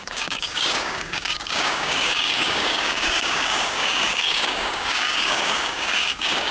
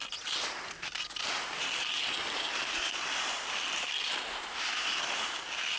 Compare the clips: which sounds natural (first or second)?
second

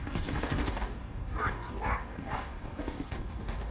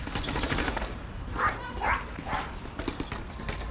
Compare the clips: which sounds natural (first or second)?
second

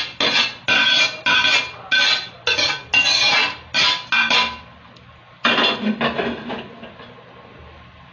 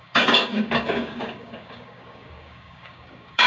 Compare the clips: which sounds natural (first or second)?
first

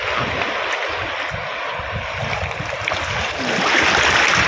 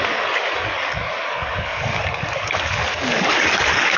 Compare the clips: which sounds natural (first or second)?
first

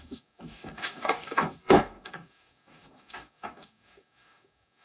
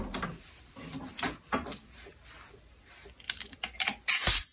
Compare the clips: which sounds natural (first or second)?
second